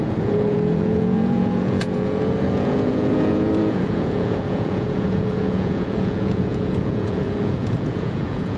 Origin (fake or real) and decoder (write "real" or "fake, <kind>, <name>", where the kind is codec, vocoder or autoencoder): fake, vocoder, Vocos